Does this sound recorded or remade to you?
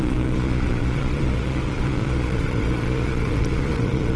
remade